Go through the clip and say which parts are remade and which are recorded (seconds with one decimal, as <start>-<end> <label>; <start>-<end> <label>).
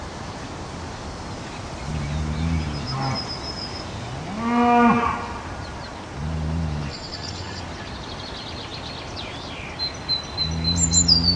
0.0-6.9 recorded; 6.9-7.6 remade; 7.6-11.4 recorded